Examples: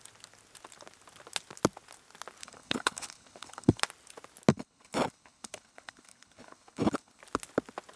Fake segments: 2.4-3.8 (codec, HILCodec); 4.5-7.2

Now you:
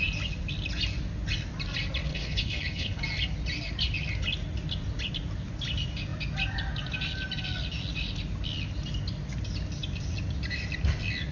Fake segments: 2.1-3.0 (codec, HILCodec)